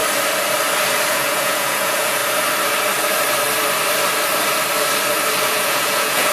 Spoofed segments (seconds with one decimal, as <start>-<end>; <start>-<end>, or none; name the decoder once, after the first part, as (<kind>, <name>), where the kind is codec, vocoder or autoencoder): 1.1-2.2 (vocoder, Vocos); 5.4-6.3